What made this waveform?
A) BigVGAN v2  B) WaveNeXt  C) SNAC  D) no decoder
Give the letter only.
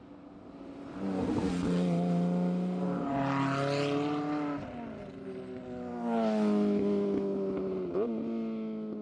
D